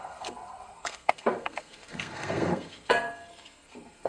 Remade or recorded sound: remade